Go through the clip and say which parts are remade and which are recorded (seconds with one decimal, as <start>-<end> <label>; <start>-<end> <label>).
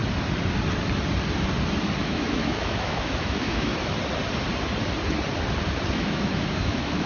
0.0-2.0 recorded; 2.0-3.7 remade; 3.7-5.9 recorded; 5.9-7.1 remade